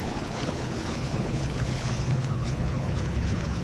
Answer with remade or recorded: remade